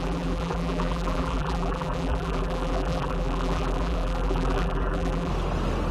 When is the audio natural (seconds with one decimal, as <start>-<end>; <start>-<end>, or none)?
5.3-5.9